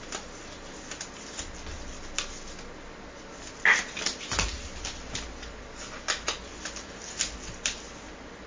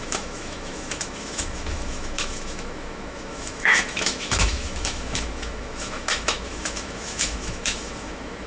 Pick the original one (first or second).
first